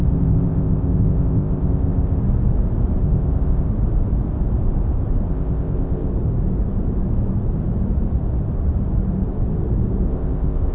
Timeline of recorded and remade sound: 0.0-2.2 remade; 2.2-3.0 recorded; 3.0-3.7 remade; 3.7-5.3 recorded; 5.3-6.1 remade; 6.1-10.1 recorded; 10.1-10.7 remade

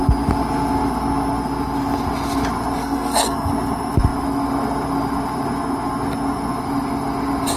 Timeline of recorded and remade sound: 0.0-2.8 recorded; 2.8-3.5 remade; 3.5-7.6 recorded

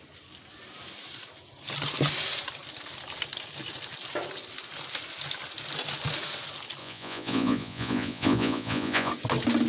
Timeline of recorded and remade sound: 0.0-6.8 recorded; 6.8-9.1 remade; 9.1-9.7 recorded

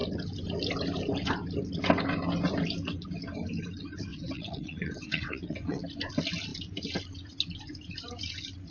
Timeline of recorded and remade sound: 0.0-4.1 recorded; 4.1-5.8 remade; 5.8-8.7 recorded

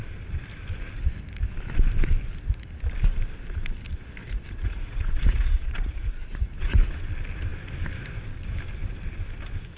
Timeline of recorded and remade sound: 0.0-4.2 recorded; 4.2-6.9 remade; 6.9-9.8 recorded

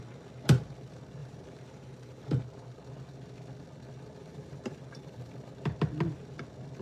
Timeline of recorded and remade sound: 0.0-1.2 recorded; 1.2-2.2 remade; 2.2-4.2 recorded; 4.2-5.3 remade; 5.3-6.8 recorded